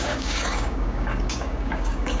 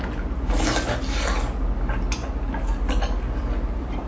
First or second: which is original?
second